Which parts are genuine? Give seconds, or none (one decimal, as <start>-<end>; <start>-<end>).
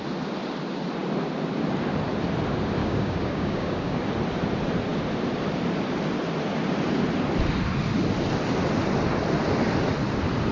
0.0-2.8; 4.0-10.5